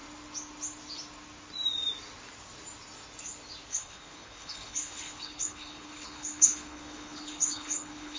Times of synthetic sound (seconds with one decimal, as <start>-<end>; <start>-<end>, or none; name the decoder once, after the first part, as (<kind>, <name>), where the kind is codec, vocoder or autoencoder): 3.7-8.2 (codec, HILCodec)

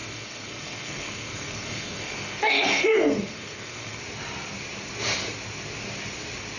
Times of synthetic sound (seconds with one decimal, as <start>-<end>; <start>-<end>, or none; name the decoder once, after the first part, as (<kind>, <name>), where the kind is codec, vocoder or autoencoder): 0.0-4.0 (codec, SNAC)